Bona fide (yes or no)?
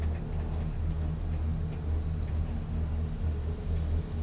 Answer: yes